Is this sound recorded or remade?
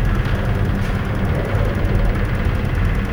recorded